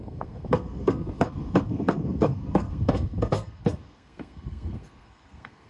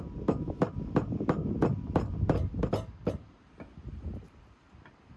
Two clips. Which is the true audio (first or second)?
second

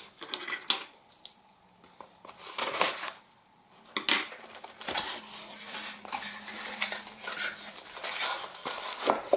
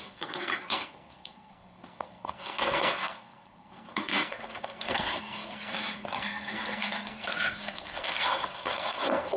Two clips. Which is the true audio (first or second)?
first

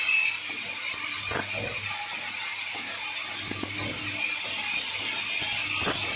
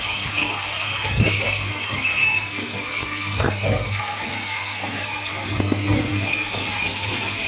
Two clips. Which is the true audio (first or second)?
first